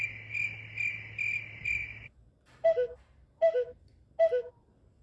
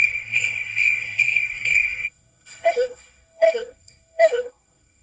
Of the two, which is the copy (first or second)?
second